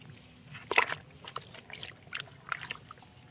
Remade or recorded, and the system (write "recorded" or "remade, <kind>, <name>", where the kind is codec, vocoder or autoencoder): recorded